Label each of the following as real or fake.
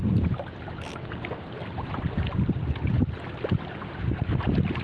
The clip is real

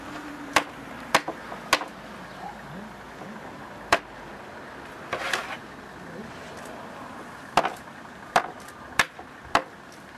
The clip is real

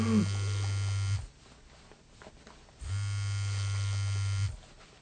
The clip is real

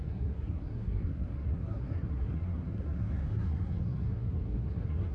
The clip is fake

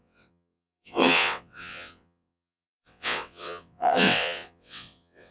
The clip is fake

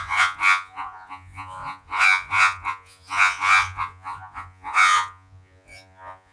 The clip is fake